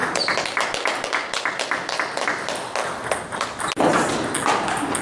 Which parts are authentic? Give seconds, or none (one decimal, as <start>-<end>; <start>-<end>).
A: 0.0-5.0